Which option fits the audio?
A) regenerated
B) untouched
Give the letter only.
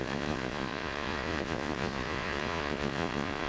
A